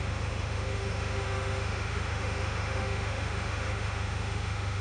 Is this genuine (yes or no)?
no